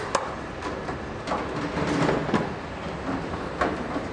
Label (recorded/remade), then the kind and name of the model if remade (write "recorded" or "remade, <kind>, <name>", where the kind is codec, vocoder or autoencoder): recorded